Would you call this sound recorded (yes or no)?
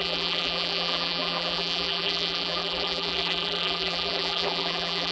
no